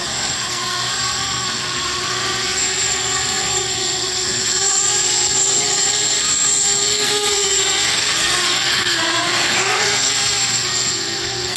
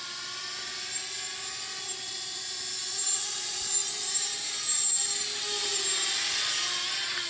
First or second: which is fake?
first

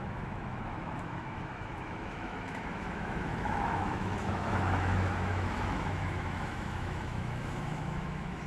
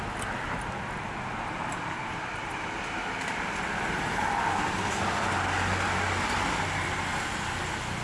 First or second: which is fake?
first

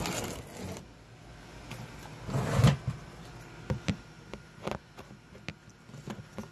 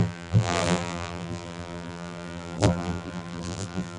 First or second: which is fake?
second